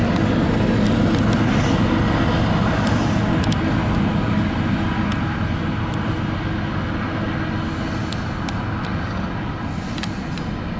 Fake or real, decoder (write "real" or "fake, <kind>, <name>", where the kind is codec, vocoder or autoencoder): real